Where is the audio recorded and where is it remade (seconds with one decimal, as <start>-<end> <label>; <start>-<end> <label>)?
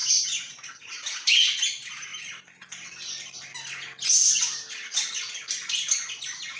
0.0-0.9 remade; 0.9-6.6 recorded